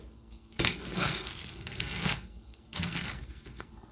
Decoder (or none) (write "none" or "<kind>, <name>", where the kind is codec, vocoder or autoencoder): codec, SNAC